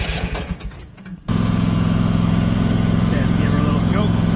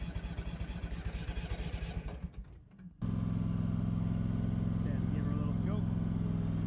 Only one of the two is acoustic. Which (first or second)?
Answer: second